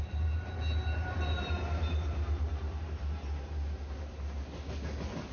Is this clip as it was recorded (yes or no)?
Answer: yes